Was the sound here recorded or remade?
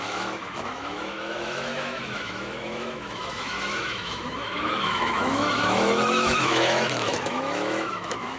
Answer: remade